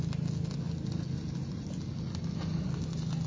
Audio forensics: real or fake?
real